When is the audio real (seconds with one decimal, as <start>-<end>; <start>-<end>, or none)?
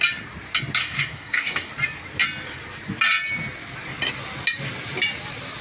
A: 0.0-0.8; 1.7-5.6